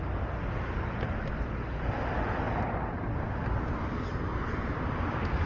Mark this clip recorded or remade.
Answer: recorded